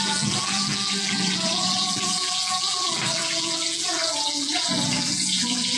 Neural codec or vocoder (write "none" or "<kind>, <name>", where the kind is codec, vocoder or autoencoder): vocoder, BigVGAN v2